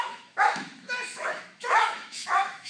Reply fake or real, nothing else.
fake